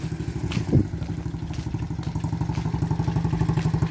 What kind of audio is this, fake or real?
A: real